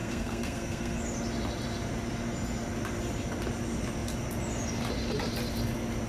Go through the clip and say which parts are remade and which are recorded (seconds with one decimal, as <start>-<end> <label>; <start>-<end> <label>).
0.0-1.0 remade; 1.0-6.1 recorded

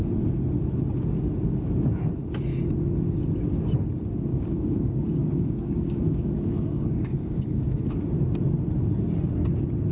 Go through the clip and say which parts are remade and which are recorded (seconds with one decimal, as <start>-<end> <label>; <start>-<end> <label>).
0.0-4.3 recorded; 4.3-7.8 remade; 7.8-9.9 recorded

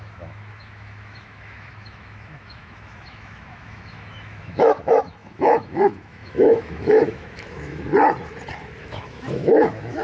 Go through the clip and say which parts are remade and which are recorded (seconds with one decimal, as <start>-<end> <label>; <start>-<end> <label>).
0.0-7.9 remade; 7.9-8.8 recorded; 8.8-10.0 remade

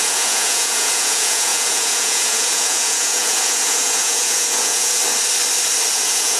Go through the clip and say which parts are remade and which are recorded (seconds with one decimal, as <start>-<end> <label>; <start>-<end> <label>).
0.0-5.0 remade; 5.0-5.9 recorded; 5.9-6.4 remade

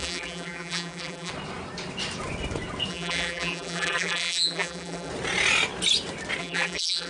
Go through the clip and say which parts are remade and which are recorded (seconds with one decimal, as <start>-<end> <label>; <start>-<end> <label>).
0.0-1.3 remade; 1.3-2.9 recorded; 2.9-5.1 remade; 5.1-6.4 recorded; 6.4-7.1 remade

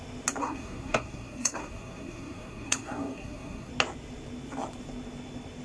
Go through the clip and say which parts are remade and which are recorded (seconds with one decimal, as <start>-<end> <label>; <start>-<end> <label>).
0.0-0.4 recorded; 0.4-3.7 remade; 3.7-5.6 recorded

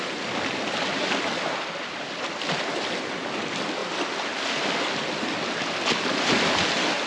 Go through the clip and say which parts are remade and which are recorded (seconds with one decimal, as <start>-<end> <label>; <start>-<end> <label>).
0.0-7.1 recorded